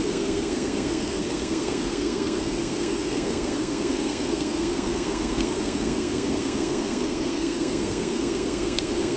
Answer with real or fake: fake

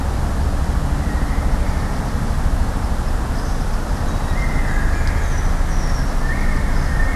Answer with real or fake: real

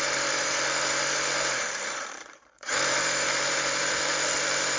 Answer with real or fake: fake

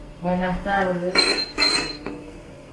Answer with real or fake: fake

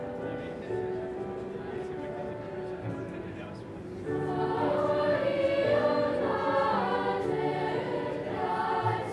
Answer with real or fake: real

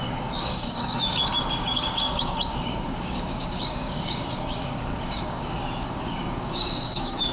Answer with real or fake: fake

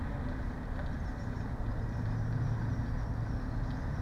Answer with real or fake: real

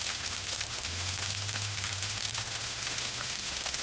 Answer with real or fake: fake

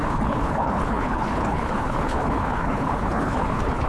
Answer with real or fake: fake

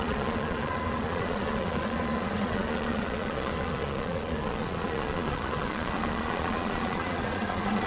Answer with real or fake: fake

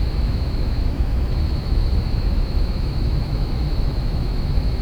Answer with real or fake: fake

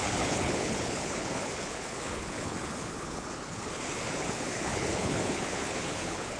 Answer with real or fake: fake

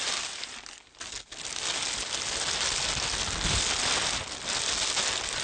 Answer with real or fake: real